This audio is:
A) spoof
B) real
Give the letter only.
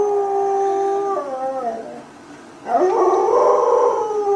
B